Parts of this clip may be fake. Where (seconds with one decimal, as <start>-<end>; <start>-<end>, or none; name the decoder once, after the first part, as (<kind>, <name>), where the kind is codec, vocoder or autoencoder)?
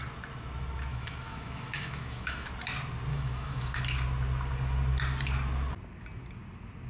0.9-2.5 (autoencoder, DAC-VAE); 3.1-3.8